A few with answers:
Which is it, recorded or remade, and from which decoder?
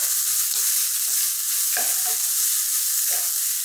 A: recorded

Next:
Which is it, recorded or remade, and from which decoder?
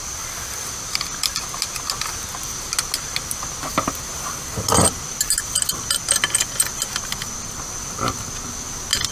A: recorded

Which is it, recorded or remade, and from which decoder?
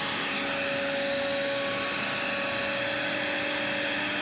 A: recorded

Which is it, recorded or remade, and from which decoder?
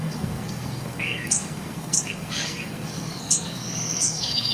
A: remade, codec, SNAC